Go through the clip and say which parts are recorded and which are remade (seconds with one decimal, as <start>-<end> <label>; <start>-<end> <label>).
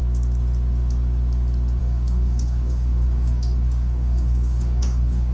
0.0-1.8 recorded; 1.8-5.3 remade